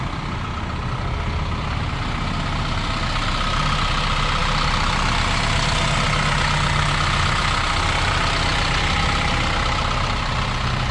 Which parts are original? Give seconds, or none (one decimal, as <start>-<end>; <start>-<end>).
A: 0.0-10.9